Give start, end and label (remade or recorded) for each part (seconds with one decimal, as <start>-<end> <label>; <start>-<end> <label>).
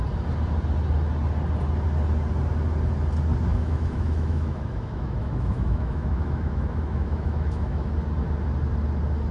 0.0-3.5 recorded; 3.5-7.9 remade; 7.9-9.3 recorded